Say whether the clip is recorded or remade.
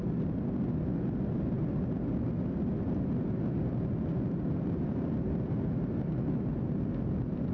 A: recorded